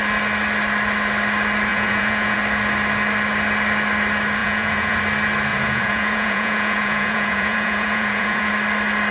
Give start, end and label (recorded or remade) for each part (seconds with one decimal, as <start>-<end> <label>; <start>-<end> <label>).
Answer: 0.0-1.7 recorded; 1.7-2.4 remade; 2.4-4.4 recorded; 4.4-5.0 remade; 5.0-5.5 recorded; 5.5-8.5 remade; 8.5-9.1 recorded